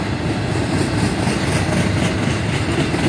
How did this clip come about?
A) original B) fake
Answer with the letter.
A